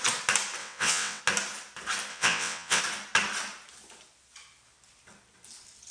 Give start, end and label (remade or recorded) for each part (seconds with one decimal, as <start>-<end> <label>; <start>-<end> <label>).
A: 0.0-0.6 recorded; 0.6-1.2 remade; 1.2-2.1 recorded; 2.1-2.8 remade; 2.8-5.9 recorded